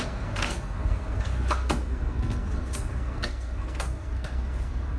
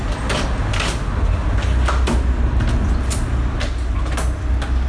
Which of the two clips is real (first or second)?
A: second